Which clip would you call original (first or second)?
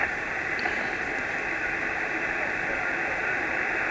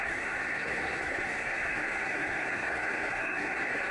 first